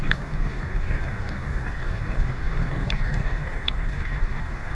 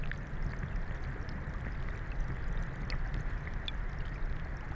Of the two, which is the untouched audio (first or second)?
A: second